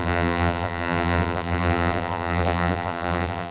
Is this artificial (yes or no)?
yes